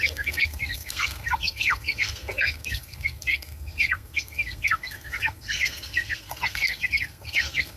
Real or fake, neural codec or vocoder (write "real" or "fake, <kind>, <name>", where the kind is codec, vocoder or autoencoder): fake, codec, SNAC